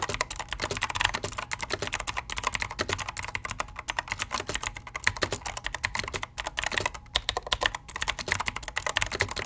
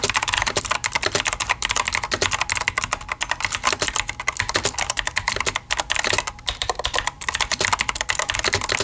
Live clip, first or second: first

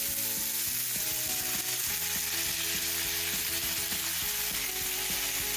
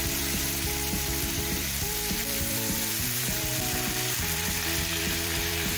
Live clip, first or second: first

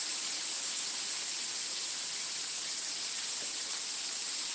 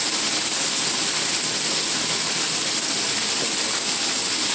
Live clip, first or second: second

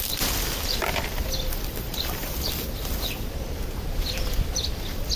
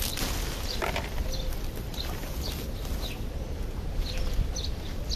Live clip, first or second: second